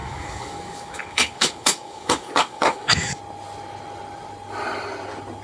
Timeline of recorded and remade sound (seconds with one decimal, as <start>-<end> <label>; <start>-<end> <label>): 0.0-3.2 remade; 3.2-5.4 recorded